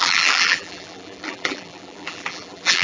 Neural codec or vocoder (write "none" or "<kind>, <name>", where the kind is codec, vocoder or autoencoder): vocoder, BigVGAN v2